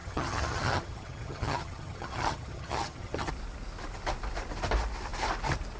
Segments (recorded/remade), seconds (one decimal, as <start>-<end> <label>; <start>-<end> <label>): 0.0-3.3 remade; 3.3-5.8 recorded